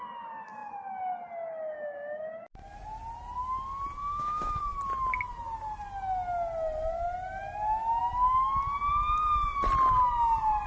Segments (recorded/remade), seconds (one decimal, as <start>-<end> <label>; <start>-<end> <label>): 0.0-4.0 recorded; 4.0-4.6 remade; 4.6-10.7 recorded